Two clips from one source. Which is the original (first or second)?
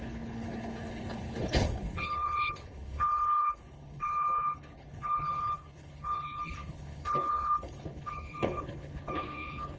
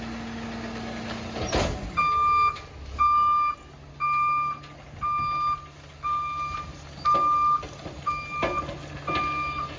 second